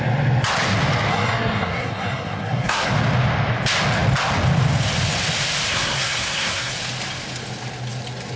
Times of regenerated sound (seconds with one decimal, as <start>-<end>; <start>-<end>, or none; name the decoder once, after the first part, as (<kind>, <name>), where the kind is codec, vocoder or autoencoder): 1.1-2.9 (codec, SNAC); 5.7-6.7